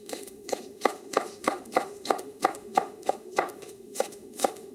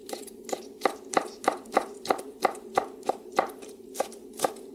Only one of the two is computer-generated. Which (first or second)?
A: first